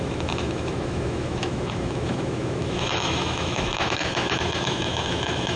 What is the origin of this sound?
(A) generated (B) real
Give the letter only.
A